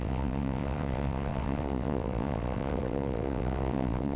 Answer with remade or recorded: remade